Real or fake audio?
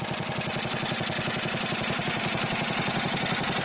fake